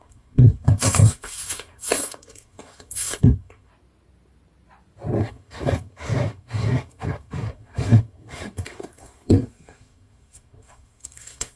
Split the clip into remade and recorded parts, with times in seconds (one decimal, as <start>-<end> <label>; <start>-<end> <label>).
0.0-3.7 remade; 3.7-5.2 recorded; 5.2-11.6 remade